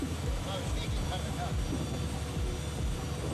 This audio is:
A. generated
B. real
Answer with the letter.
B